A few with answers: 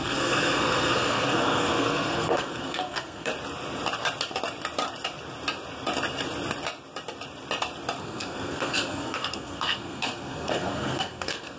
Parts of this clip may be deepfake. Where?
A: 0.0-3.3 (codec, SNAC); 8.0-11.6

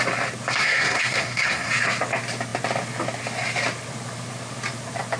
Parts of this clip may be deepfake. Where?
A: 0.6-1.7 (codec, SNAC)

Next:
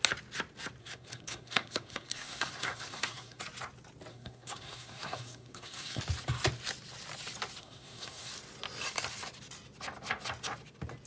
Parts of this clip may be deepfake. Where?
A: 0.8-3.4 (codec, SNAC); 4.1-6.0; 7.6-8.3

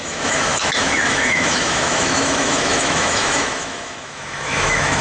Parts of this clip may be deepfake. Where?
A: 0.0-5.0 (autoencoder, DAC-VAE)